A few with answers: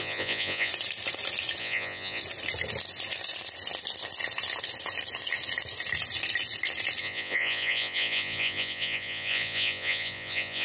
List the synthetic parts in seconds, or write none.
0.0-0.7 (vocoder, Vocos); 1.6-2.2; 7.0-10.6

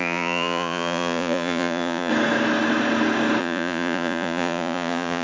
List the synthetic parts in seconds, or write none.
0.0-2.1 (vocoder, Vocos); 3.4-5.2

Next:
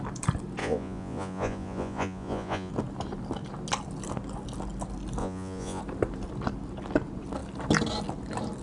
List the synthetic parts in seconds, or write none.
0.6-2.7 (vocoder, Vocos); 5.2-5.8

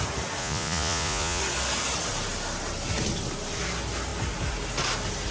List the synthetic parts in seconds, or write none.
0.4-1.4 (vocoder, Vocos)